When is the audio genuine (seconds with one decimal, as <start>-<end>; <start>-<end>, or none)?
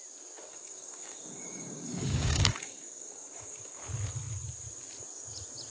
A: 0.0-0.4; 3.8-5.7